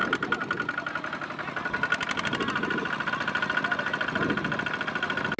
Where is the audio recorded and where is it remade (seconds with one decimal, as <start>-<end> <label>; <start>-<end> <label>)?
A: 0.0-5.4 recorded